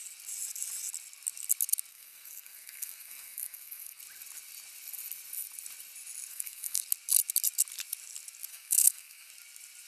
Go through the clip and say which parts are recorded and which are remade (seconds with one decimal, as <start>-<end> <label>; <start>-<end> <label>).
0.0-1.9 recorded; 1.9-4.0 remade; 4.0-6.3 recorded; 6.3-6.8 remade; 6.8-8.5 recorded; 8.5-9.3 remade; 9.3-9.9 recorded